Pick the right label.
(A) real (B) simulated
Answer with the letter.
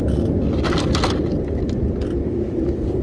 A